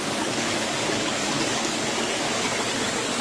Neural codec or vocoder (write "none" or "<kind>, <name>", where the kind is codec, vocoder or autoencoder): codec, DAC